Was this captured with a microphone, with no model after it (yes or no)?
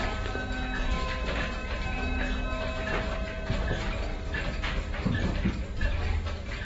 yes